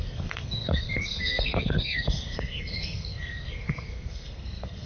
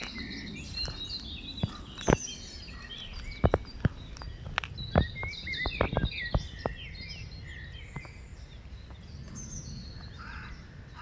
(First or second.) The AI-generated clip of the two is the first